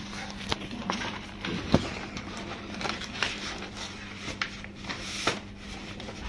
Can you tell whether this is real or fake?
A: fake